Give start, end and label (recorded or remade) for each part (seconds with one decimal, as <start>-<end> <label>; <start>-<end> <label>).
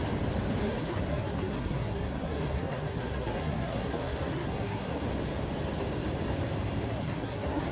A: 0.0-0.6 recorded; 0.6-5.0 remade; 5.0-6.9 recorded; 6.9-7.7 remade